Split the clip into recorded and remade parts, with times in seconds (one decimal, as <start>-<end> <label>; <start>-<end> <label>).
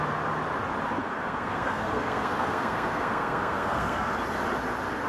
0.0-1.0 recorded; 1.0-4.1 remade; 4.1-5.1 recorded